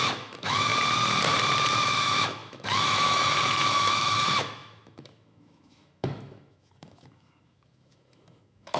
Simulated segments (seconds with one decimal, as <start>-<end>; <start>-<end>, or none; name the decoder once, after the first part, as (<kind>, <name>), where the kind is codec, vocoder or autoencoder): 0.0-0.7 (autoencoder, DAC-VAE); 1.7-8.8